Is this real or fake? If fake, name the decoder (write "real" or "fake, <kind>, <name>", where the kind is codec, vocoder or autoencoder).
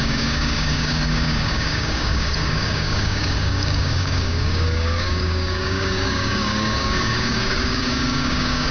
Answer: fake, codec, DAC